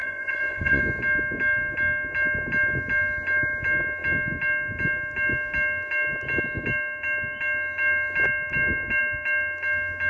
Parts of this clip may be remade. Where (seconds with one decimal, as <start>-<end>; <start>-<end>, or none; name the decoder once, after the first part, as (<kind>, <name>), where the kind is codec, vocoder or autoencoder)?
0.0-0.8 (vocoder, Vocos)